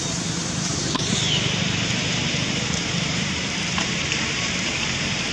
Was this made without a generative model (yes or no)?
no